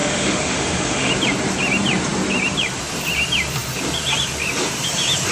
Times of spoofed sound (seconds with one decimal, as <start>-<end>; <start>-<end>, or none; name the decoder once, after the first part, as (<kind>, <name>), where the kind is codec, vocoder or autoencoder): 0.0-1.1 (autoencoder, DAC-VAE)